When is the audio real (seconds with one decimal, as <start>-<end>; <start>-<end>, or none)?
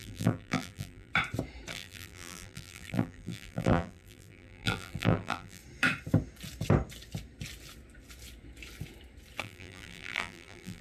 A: 1.1-1.7; 5.6-9.4